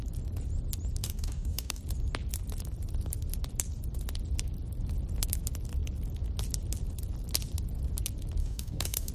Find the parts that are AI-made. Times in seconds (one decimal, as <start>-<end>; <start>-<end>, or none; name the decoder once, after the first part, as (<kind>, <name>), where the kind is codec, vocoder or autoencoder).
1.0-1.8 (codec, DAC); 8.4-9.1